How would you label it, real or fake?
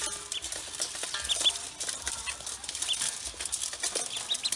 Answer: real